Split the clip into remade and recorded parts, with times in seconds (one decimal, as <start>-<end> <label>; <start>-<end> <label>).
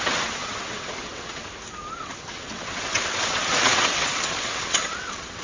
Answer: 0.0-1.4 remade; 1.4-2.0 recorded; 2.0-5.4 remade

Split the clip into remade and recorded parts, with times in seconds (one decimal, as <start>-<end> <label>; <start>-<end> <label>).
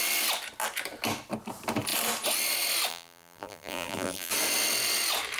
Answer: 0.0-2.9 recorded; 2.9-4.3 remade; 4.3-5.4 recorded